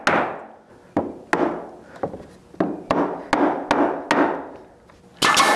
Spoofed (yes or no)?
no